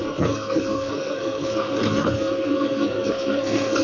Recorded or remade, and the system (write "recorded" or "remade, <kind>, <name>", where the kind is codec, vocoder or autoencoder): remade, codec, SNAC